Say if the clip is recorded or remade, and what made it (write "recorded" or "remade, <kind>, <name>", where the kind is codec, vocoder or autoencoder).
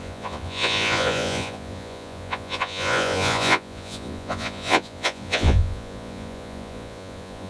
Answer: remade, vocoder, Vocos